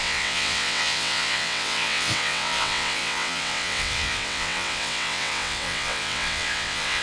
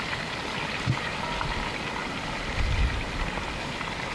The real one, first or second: second